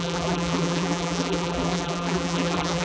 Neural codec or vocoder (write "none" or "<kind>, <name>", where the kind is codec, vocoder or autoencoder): vocoder, BigVGAN v2